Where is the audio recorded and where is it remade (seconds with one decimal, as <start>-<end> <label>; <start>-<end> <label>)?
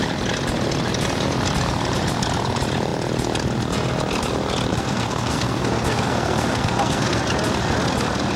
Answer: 0.0-4.7 recorded; 4.7-7.2 remade; 7.2-8.4 recorded